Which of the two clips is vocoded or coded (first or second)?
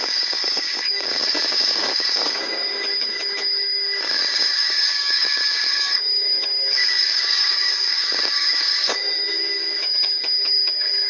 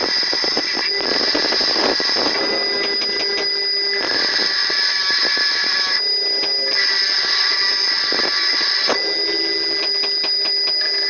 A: first